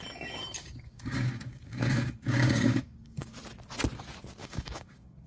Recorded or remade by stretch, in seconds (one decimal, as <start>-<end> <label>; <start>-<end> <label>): 0.0-0.6 recorded; 0.6-3.3 remade; 3.3-4.4 recorded; 4.4-5.3 remade

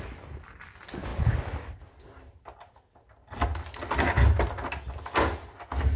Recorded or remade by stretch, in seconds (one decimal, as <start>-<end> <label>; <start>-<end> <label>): 0.0-6.0 recorded

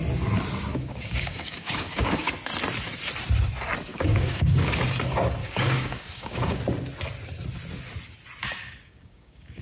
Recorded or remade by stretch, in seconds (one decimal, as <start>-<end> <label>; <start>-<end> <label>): 0.0-0.7 recorded; 0.7-2.3 remade; 2.3-3.9 recorded; 3.9-4.8 remade; 4.8-5.4 recorded; 5.4-6.6 remade; 6.6-8.4 recorded; 8.4-9.6 remade

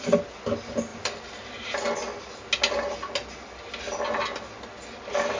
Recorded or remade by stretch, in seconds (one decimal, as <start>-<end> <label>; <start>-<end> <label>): 0.0-5.4 recorded

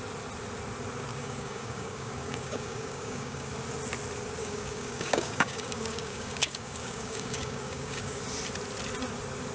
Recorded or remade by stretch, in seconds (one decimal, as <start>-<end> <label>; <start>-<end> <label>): 0.0-1.1 recorded; 1.1-3.5 remade; 3.5-4.4 recorded; 4.4-8.2 remade; 8.2-9.5 recorded